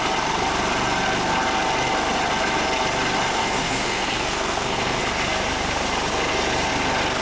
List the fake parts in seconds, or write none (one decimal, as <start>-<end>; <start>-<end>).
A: 3.4-5.0